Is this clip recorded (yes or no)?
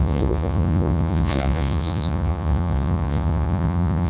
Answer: no